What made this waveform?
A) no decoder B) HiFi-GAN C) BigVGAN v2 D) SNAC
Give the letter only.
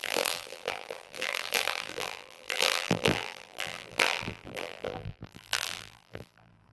C